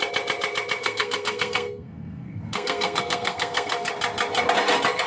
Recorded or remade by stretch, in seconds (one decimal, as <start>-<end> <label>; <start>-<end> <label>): 0.0-0.8 recorded; 0.8-3.9 remade; 3.9-5.1 recorded